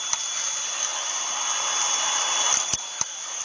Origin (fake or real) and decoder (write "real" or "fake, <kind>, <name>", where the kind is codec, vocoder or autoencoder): real